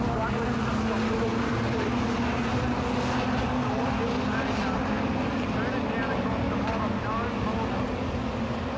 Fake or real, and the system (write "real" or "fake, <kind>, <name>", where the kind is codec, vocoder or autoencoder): real